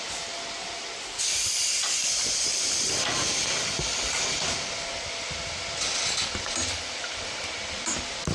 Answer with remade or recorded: recorded